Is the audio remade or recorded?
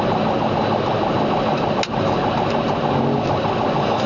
recorded